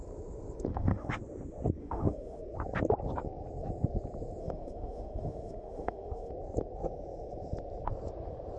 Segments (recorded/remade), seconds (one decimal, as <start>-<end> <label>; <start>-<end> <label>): 0.0-0.7 recorded; 0.7-1.2 remade; 1.2-1.8 recorded; 1.8-2.4 remade; 2.4-4.4 recorded; 4.4-6.3 remade; 6.3-8.6 recorded